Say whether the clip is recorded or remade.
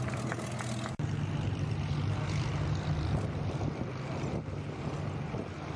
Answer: recorded